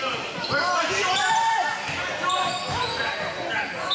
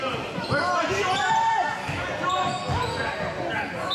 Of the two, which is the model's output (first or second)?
first